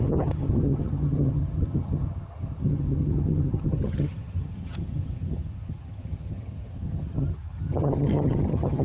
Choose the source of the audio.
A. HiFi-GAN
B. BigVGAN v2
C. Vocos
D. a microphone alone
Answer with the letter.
A